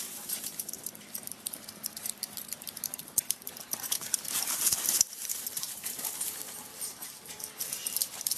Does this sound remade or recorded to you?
remade